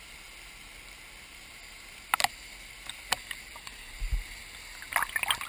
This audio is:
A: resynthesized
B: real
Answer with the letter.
B